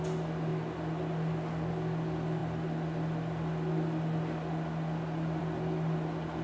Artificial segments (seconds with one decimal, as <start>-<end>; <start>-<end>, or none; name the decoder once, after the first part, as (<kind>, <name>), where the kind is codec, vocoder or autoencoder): none